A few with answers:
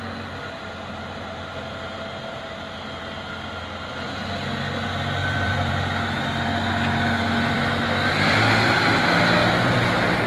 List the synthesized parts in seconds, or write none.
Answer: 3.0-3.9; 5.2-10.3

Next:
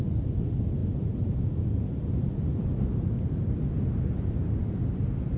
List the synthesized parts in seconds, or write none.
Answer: none

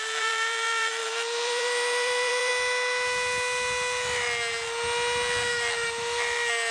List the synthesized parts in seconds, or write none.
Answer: 0.0-2.5

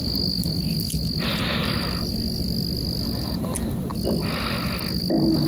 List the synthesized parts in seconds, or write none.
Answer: 0.0-0.5; 1.3-2.1

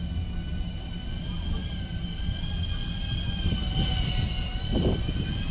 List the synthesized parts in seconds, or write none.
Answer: 1.6-2.1